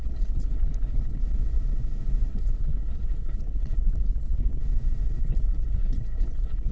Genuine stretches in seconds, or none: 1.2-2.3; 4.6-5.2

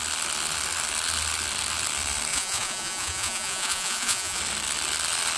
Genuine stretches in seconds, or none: 0.0-2.3; 4.4-5.4

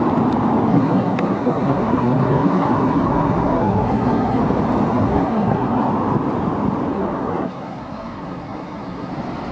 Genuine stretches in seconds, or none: 0.0-0.7; 4.4-4.9; 5.9-6.9; 9.1-9.5

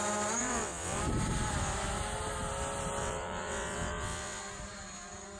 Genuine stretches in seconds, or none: 0.0-0.4; 1.0-3.0; 4.4-5.4

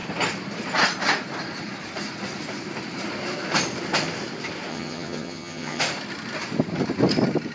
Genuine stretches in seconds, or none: 0.0-4.7; 5.8-7.5

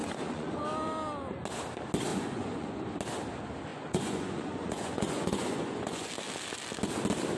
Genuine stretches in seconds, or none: 0.6-2.1; 2.8-3.7; 6.1-7.4